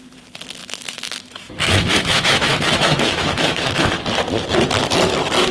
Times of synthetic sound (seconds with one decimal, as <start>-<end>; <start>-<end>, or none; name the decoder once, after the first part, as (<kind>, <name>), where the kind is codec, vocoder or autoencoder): 0.6-3.9 (autoencoder, DAC-VAE)